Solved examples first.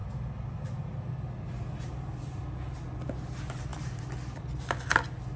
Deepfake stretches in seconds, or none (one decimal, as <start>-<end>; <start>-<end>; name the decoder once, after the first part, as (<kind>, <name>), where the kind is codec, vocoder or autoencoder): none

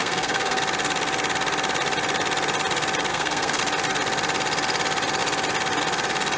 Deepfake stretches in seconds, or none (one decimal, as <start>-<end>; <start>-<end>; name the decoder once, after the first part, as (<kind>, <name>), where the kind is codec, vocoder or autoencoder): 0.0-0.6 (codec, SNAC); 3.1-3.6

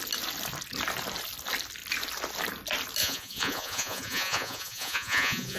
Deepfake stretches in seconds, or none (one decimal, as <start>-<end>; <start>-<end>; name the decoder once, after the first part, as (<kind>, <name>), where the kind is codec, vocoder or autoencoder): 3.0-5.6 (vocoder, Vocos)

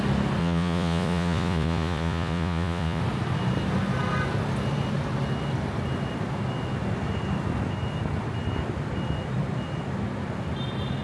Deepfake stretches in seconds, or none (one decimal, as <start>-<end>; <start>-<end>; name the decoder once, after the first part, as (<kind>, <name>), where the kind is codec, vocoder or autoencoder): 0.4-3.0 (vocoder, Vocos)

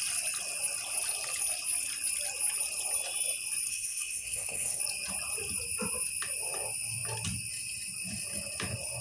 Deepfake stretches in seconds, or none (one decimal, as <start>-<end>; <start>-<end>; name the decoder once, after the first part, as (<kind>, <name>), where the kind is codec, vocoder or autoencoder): 3.7-4.8 (codec, SNAC)

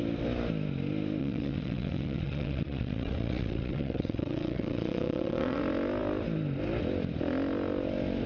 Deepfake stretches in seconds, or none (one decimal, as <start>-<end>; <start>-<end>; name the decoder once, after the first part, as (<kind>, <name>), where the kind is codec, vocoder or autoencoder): 1.2-5.6 (vocoder, WaveNeXt)

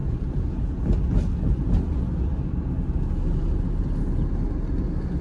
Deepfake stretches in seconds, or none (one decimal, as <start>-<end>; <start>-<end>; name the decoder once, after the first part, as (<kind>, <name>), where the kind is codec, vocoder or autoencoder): 0.0-0.8 (vocoder, Vocos)